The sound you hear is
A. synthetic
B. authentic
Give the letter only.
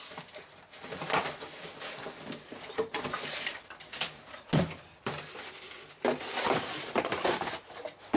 B